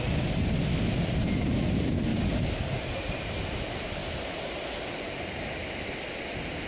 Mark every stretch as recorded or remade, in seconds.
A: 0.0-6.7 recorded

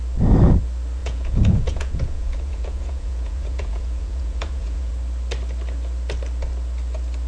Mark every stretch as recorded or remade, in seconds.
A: 0.0-1.0 recorded; 1.0-4.9 remade; 4.9-7.3 recorded

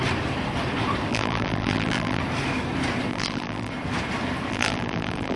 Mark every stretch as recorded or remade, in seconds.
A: 0.0-1.1 recorded; 1.1-2.2 remade; 2.2-3.1 recorded; 3.1-3.7 remade; 3.7-4.5 recorded; 4.5-5.4 remade

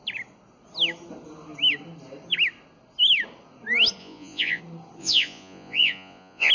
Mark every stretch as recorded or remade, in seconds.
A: 0.0-4.0 recorded; 4.0-4.6 remade; 4.6-5.0 recorded; 5.0-6.5 remade

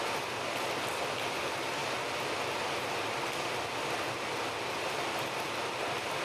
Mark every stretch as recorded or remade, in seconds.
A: 0.0-1.4 recorded; 1.4-1.8 remade; 1.8-4.8 recorded; 4.8-6.2 remade

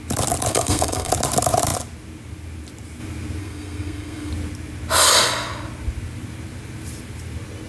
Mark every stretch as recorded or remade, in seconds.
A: 0.0-0.5 recorded; 0.5-1.1 remade; 1.1-3.4 recorded; 3.4-4.3 remade; 4.3-7.7 recorded

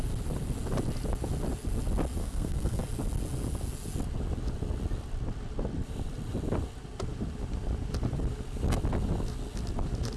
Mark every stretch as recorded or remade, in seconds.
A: 0.0-2.2 recorded; 2.2-2.8 remade; 2.8-10.2 recorded

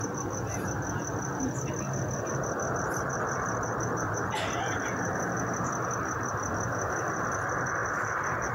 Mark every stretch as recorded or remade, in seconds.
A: 0.0-8.5 recorded